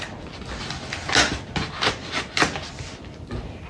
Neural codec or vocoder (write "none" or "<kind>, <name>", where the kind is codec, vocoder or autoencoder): none